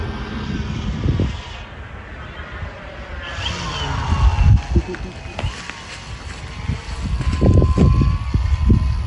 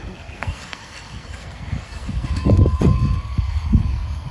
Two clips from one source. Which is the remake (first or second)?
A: second